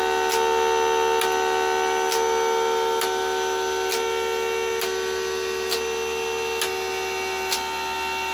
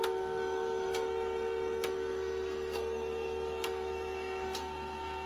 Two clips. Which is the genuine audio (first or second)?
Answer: first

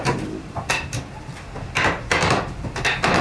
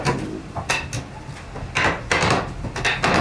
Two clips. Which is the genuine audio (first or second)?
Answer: second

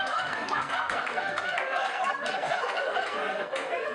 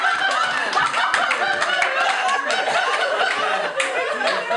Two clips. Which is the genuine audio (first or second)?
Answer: second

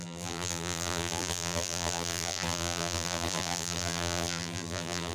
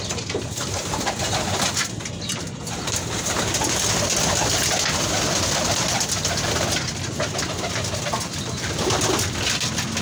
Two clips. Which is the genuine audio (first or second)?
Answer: second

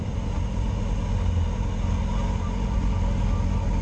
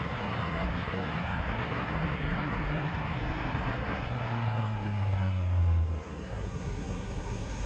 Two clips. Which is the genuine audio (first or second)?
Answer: first